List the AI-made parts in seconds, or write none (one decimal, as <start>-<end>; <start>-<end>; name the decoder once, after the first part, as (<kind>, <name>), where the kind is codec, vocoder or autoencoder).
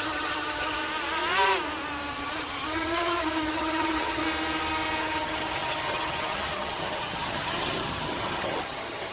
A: 0.0-0.8 (vocoder, HiFi-GAN); 2.1-4.2; 5.0-9.1